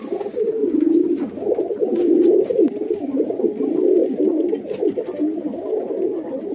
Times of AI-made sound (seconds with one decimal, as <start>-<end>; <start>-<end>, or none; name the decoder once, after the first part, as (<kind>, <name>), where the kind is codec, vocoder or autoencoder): 0.6-1.3 (vocoder, BigVGAN v2); 2.5-3.4; 4.0-4.8

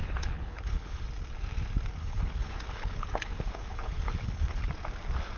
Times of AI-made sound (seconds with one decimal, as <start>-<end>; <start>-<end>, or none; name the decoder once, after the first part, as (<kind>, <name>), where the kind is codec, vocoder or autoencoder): 0.0-1.0 (codec, HILCodec); 2.0-4.7

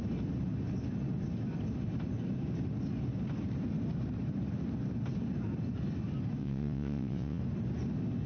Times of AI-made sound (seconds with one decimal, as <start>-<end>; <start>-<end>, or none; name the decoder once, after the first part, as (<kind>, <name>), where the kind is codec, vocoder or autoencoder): 6.4-7.4 (vocoder, WaveNeXt)

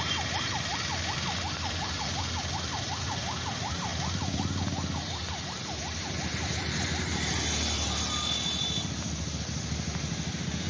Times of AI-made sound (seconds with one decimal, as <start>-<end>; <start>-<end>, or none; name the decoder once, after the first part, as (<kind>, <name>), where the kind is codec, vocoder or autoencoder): none

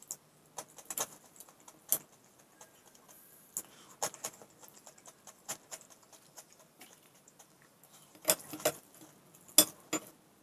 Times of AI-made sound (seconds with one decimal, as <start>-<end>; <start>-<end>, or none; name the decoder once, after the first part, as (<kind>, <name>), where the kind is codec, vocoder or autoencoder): 5.7-8.1 (vocoder, BigVGAN v2)

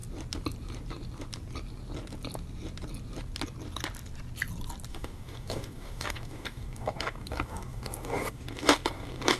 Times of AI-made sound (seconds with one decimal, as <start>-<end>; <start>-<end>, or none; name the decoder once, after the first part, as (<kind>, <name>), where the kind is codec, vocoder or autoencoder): 4.9-9.4 (codec, DAC)

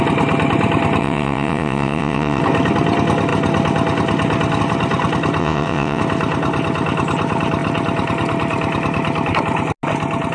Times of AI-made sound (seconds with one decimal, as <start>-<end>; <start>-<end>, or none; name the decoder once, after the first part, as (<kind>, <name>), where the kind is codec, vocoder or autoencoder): 1.0-2.4 (vocoder, WaveNeXt); 5.4-6.0